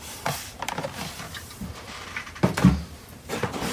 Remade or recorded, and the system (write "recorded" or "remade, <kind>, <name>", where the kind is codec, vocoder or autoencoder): remade, vocoder, BigVGAN v2